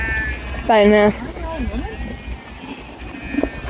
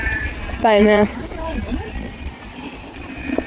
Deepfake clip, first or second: second